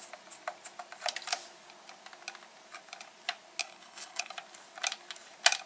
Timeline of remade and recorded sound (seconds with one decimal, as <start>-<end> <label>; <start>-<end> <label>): 0.0-3.6 recorded; 3.6-4.3 remade; 4.3-5.7 recorded